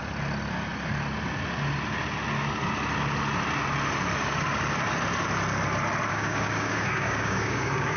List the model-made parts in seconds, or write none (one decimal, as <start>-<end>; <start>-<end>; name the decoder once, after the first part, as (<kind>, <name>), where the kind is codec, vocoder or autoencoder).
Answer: 6.1-8.0 (codec, DAC)